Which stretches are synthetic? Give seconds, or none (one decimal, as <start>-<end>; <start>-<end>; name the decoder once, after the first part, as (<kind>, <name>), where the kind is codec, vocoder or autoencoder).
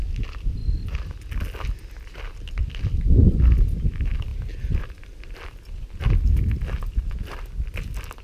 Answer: none